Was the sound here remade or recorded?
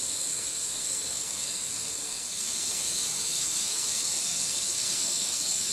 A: remade